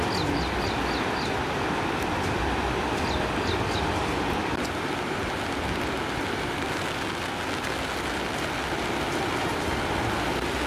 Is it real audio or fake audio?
real